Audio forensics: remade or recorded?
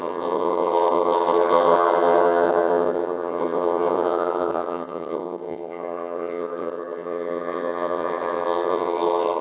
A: remade